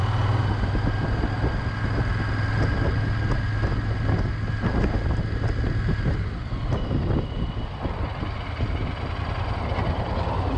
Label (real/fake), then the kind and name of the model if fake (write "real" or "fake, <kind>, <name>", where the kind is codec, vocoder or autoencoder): real